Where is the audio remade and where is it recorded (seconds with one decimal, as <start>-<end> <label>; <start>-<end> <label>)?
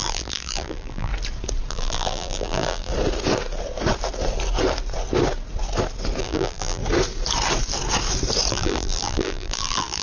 0.0-1.1 remade; 1.1-1.7 recorded; 1.7-2.9 remade; 2.9-6.2 recorded; 6.2-6.8 remade; 6.8-8.5 recorded; 8.5-10.0 remade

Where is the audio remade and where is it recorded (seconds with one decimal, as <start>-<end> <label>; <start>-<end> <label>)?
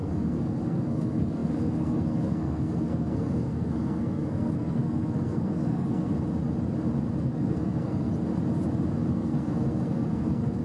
0.0-6.1 remade; 6.1-7.2 recorded; 7.2-8.1 remade; 8.1-9.1 recorded; 9.1-10.6 remade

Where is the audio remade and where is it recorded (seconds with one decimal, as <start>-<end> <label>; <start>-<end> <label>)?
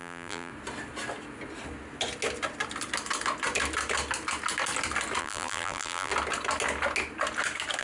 0.0-0.5 remade; 0.5-5.2 recorded; 5.2-6.1 remade; 6.1-7.8 recorded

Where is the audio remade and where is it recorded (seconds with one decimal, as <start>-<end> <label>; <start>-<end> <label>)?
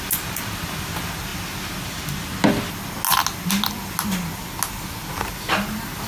0.0-6.1 recorded